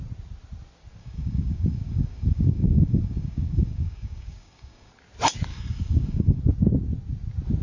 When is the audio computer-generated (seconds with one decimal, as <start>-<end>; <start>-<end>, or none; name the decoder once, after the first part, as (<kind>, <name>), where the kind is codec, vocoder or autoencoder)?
1.0-4.9 (codec, DAC); 5.5-6.4